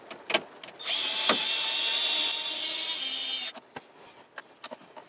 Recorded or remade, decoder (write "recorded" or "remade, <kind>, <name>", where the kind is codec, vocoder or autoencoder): recorded